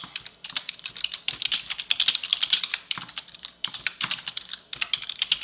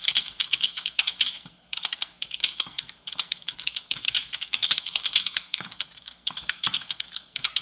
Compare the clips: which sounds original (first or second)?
first